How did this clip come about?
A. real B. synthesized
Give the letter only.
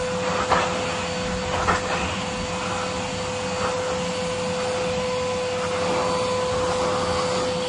A